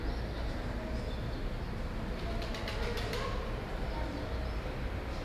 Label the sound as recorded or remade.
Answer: recorded